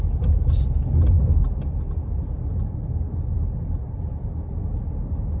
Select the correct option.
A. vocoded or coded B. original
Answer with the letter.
B